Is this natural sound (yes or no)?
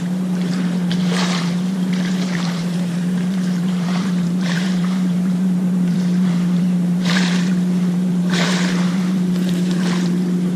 no